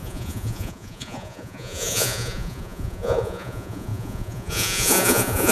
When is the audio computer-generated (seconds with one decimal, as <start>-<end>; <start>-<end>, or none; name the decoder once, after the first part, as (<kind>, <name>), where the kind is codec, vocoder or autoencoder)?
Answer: 0.0-5.5 (vocoder, Vocos)